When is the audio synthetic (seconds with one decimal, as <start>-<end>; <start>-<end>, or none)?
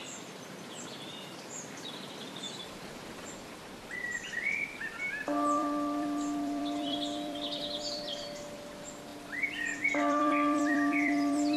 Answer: 0.0-11.6